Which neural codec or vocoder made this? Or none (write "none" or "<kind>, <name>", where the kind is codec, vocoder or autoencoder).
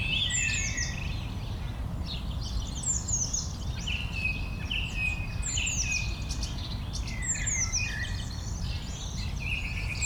none